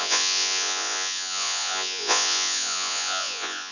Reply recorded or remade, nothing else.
remade